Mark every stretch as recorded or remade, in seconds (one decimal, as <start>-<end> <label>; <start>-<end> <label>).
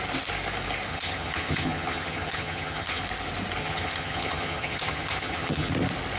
0.0-0.9 recorded; 0.9-3.0 remade; 3.0-3.6 recorded; 3.6-5.7 remade; 5.7-6.2 recorded